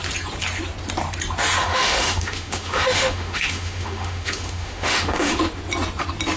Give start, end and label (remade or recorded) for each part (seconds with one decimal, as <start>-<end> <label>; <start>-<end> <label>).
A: 0.0-1.6 recorded; 1.6-5.4 remade; 5.4-6.4 recorded

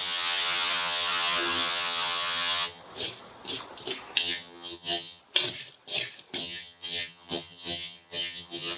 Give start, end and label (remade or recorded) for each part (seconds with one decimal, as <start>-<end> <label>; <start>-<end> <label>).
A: 0.0-2.8 remade; 2.8-4.2 recorded; 4.2-5.2 remade; 5.2-6.4 recorded; 6.4-8.8 remade

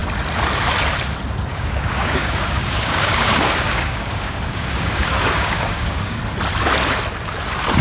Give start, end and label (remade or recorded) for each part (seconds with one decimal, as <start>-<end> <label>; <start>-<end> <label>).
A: 0.0-1.5 recorded; 1.5-6.2 remade; 6.2-7.8 recorded

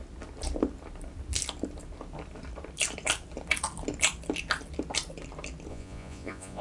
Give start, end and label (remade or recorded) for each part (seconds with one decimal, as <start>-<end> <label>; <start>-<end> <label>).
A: 0.0-5.7 recorded; 5.7-6.6 remade

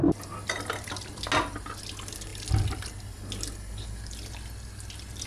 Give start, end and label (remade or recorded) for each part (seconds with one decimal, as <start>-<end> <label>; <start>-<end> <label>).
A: 0.0-5.3 recorded